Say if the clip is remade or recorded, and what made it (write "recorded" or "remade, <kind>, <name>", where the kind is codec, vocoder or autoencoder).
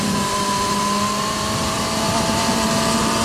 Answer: remade, vocoder, BigVGAN v2